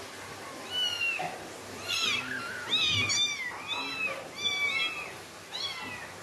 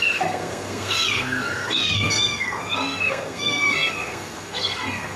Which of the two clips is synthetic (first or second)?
second